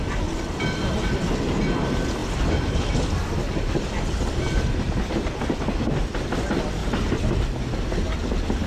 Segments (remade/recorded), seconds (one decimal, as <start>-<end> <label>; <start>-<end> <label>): 0.0-6.8 recorded; 6.8-7.5 remade; 7.5-8.7 recorded